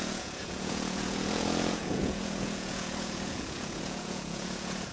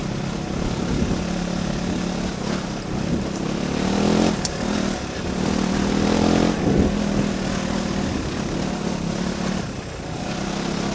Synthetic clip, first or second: first